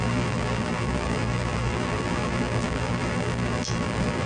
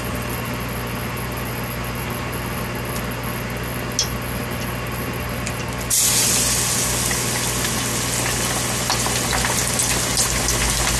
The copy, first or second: first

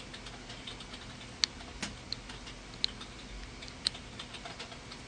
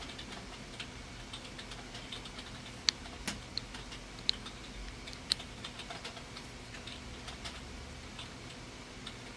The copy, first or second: second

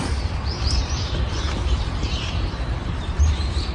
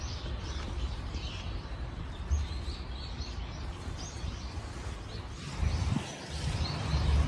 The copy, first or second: first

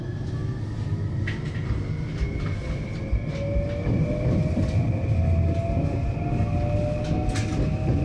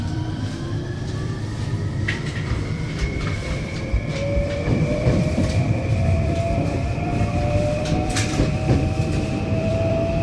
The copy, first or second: second